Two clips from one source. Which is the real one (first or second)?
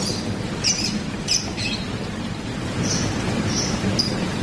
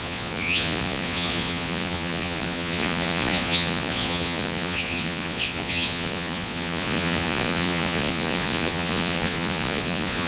first